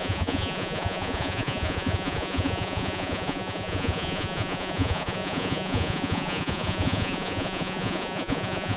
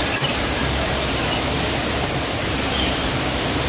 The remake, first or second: first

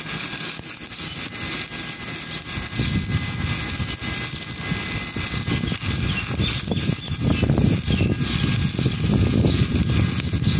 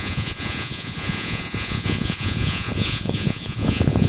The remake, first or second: second